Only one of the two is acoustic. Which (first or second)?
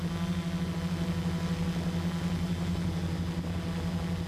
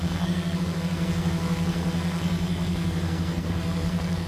first